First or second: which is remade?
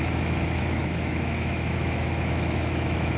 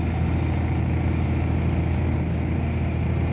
first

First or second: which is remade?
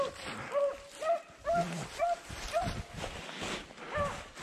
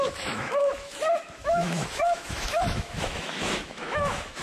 second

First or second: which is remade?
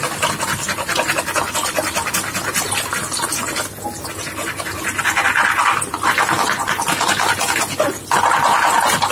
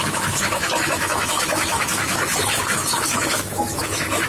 second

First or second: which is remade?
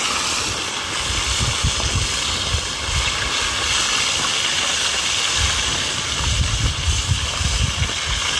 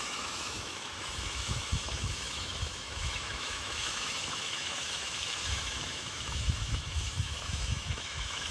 second